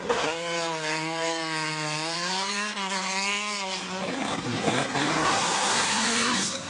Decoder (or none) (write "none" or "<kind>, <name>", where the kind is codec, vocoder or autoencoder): codec, SNAC